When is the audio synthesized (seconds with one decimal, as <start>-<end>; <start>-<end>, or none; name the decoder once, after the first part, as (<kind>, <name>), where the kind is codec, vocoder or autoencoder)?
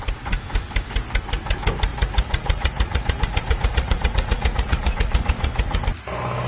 1.9-5.8 (vocoder, Vocos)